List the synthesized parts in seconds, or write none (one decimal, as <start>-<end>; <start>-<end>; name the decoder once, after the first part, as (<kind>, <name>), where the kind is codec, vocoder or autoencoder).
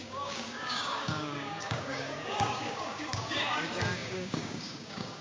0.0-5.2 (codec, DAC)